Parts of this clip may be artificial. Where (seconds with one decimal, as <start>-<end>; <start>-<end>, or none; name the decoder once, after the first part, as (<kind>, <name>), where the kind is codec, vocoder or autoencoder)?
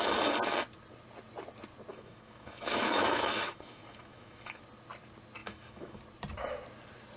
1.9-4.6 (autoencoder, DAC-VAE); 5.4-6.0